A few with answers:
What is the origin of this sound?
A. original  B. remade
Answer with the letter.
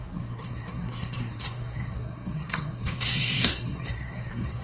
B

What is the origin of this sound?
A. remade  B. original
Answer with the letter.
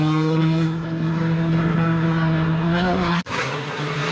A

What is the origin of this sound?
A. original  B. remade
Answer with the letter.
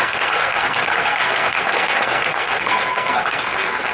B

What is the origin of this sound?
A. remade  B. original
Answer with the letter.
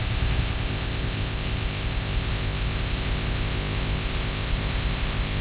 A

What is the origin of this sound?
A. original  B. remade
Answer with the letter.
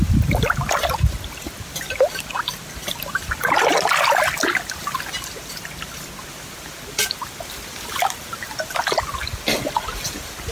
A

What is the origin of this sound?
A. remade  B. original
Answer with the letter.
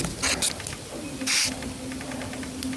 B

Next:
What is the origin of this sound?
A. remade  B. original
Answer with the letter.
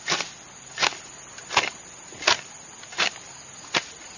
B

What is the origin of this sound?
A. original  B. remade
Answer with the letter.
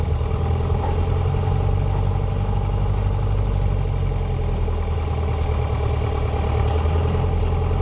A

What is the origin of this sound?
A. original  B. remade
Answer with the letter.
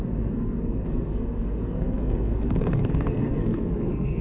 B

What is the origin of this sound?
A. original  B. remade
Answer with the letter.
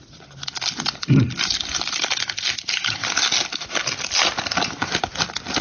A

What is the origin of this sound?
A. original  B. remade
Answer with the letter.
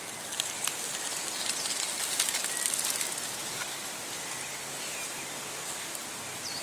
A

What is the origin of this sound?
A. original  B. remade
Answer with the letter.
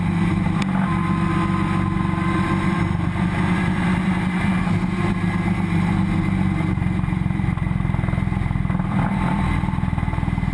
A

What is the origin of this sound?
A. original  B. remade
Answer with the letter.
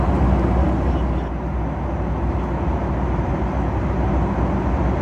A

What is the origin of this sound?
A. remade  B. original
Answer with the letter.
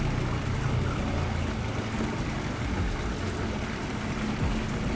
B